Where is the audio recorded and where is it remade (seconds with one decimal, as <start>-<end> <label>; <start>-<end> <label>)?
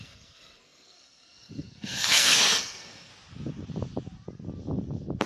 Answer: 0.0-3.1 remade; 3.1-5.3 recorded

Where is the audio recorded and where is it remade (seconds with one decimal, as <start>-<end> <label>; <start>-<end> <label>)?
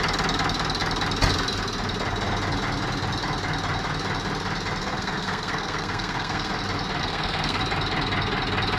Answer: 0.0-4.8 recorded; 4.8-6.5 remade; 6.5-7.0 recorded; 7.0-7.6 remade; 7.6-8.8 recorded